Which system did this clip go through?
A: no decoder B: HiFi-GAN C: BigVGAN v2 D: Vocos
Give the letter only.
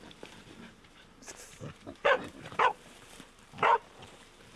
C